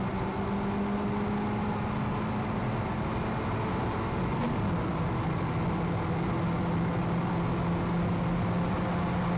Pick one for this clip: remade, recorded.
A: recorded